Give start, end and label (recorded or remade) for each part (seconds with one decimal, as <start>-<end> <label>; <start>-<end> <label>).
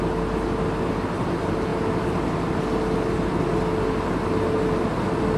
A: 0.0-5.4 recorded